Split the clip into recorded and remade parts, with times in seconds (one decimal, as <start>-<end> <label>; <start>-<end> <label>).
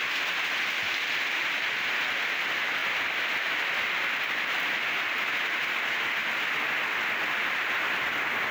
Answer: 0.0-8.5 recorded